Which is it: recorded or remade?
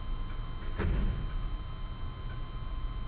recorded